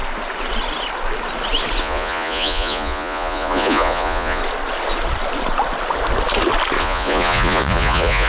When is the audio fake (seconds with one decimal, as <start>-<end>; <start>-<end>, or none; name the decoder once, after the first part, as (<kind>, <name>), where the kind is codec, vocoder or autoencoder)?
1.8-4.4 (vocoder, Vocos); 6.8-8.3